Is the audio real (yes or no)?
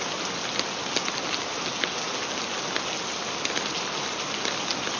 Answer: yes